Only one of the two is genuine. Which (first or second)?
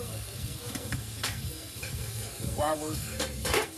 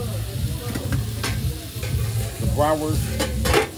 second